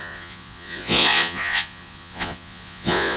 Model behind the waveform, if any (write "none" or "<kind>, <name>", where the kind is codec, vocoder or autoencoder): vocoder, Vocos